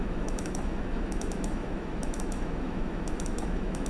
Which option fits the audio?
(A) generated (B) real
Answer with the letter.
A